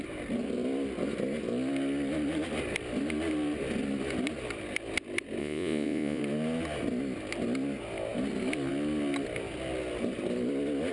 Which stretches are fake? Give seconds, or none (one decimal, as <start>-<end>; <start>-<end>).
5.4-6.2